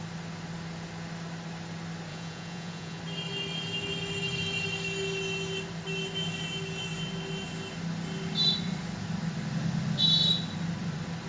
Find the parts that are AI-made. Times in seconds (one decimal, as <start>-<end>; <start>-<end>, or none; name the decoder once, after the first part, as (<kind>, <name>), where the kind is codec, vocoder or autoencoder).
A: 2.1-3.0 (vocoder, Vocos)